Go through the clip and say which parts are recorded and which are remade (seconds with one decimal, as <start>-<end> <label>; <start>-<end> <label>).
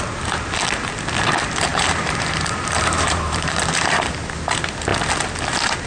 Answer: 0.0-1.7 recorded; 1.7-4.4 remade; 4.4-5.9 recorded